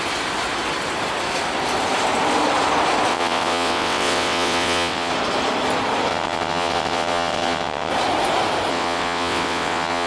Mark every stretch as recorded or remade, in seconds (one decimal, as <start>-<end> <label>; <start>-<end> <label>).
0.0-3.1 recorded; 3.1-5.1 remade; 5.1-6.1 recorded; 6.1-7.9 remade; 7.9-8.7 recorded; 8.7-10.1 remade